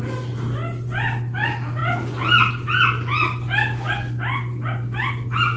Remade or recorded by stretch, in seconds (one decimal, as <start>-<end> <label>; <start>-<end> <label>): 0.0-5.6 recorded